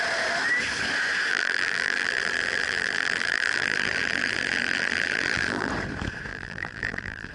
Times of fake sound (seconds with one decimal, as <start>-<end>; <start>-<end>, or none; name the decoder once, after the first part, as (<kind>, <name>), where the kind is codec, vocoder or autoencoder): 1.3-5.7 (vocoder, BigVGAN v2); 6.3-7.3